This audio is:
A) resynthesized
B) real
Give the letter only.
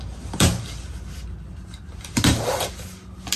B